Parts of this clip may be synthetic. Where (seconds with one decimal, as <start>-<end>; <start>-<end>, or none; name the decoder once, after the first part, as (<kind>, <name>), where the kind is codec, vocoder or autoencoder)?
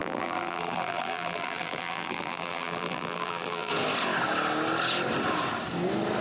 0.0-3.7 (vocoder, BigVGAN v2)